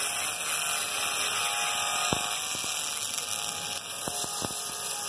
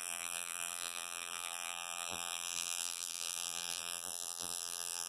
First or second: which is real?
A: first